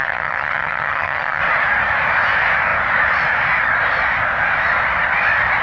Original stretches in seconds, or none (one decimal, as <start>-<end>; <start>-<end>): 1.4-5.6